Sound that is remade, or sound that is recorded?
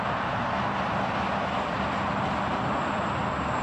remade